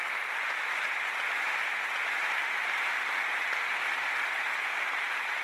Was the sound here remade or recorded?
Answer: recorded